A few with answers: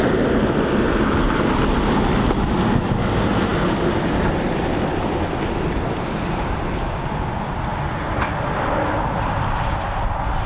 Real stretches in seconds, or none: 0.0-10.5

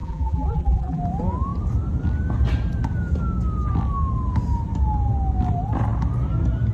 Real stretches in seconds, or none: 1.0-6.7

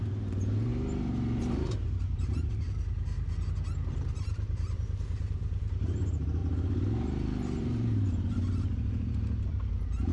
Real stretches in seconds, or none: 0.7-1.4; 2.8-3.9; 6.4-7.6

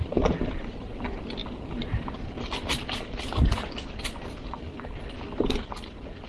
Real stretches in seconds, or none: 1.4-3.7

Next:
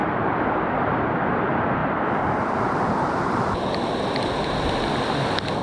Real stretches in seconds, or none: 0.9-1.8; 3.9-5.6

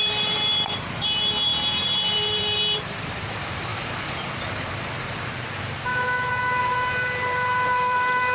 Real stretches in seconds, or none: 5.9-6.6

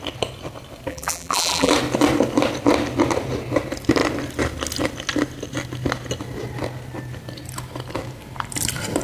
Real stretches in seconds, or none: 0.0-0.9; 1.7-9.0

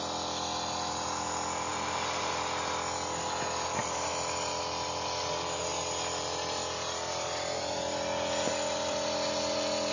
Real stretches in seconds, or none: 0.0-1.7; 2.3-9.9